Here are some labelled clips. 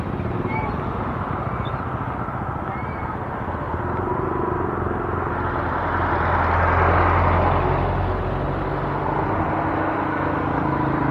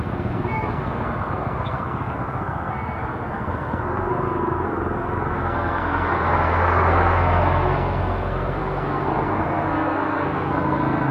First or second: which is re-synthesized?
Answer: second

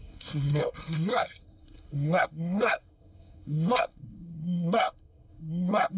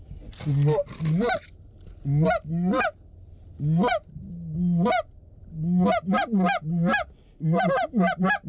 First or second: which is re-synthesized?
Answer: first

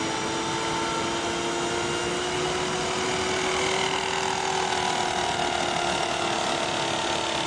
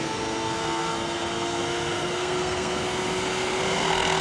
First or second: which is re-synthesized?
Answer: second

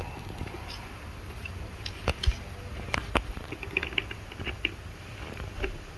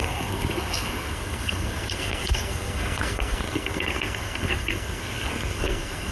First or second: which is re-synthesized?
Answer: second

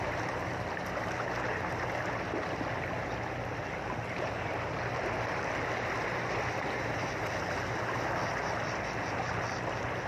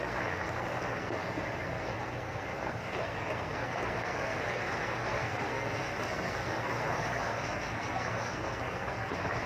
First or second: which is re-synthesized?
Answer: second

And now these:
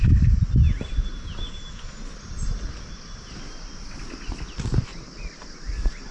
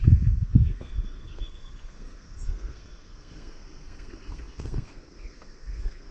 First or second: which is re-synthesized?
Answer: second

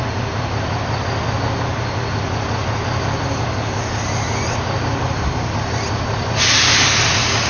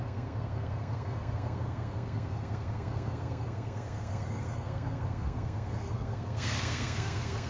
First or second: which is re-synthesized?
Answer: second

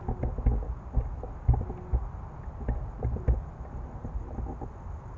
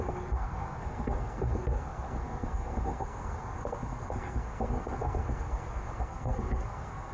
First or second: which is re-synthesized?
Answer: second